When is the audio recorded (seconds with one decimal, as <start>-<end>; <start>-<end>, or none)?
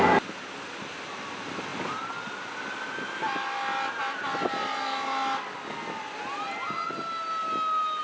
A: 0.0-8.0